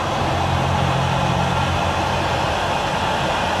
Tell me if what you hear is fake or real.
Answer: real